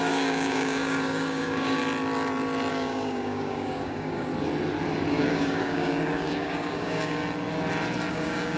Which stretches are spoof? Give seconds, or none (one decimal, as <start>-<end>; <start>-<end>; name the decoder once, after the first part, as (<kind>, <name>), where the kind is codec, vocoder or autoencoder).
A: 0.0-1.8 (codec, DAC); 2.7-4.3; 5.1-7.2; 8.1-8.6